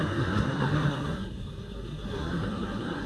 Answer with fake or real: fake